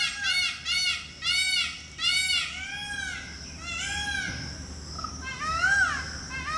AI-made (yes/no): no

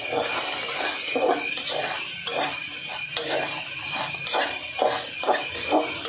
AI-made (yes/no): no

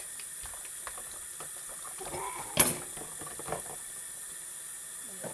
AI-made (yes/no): no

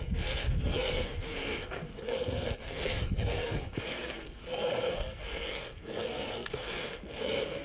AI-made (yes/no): yes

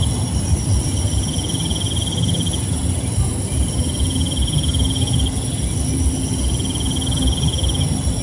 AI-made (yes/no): no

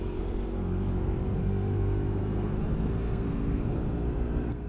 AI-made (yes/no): yes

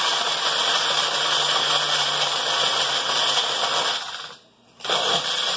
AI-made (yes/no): no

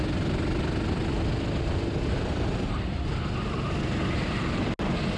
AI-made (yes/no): no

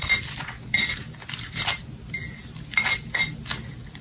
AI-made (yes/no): no